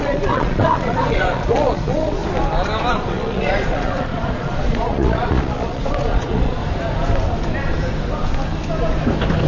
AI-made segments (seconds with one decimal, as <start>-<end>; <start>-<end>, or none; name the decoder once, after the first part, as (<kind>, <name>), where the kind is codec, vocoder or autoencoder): 0.0-2.2 (vocoder, Vocos); 2.9-6.6